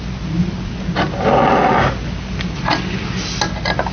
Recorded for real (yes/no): yes